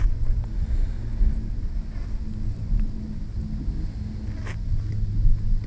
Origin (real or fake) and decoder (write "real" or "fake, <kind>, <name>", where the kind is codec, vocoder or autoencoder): real